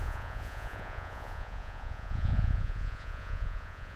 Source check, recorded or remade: remade